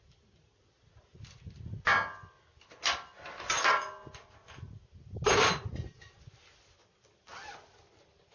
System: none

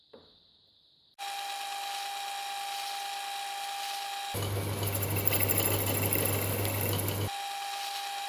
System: none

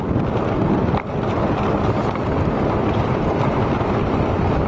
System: none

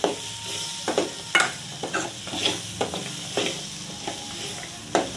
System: none